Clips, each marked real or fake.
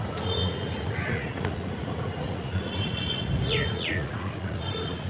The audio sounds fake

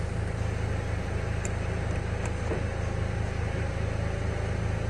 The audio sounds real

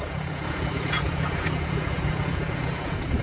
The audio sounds fake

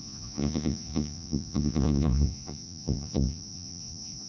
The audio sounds fake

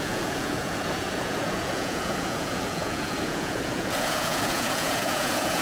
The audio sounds fake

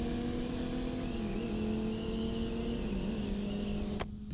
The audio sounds real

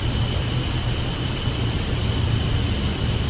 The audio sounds real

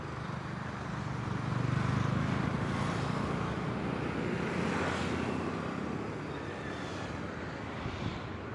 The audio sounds real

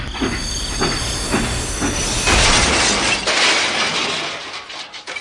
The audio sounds real